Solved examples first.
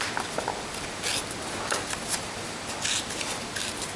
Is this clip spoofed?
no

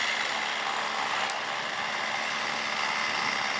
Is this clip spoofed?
no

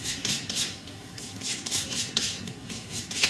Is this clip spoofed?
yes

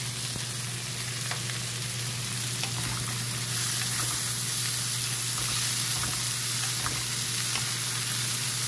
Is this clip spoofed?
no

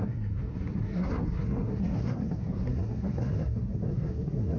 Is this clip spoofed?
yes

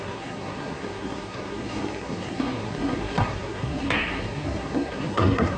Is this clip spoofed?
yes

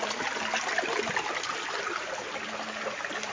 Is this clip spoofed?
no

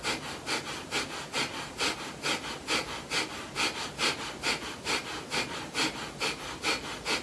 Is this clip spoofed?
no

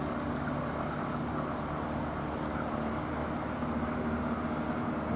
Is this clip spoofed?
no